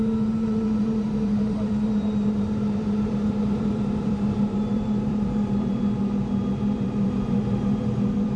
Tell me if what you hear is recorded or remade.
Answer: remade